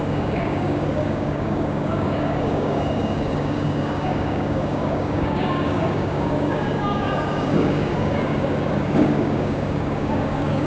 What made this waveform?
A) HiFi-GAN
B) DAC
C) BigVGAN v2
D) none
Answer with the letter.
B